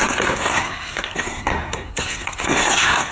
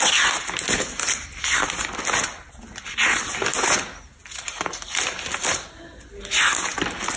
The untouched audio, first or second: second